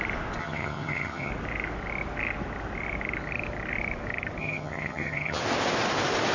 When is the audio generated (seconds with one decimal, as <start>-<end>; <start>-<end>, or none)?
0.4-1.3; 4.4-5.4